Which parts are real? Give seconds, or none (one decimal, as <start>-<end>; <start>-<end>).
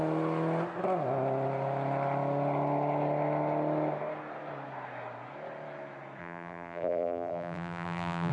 0.0-6.2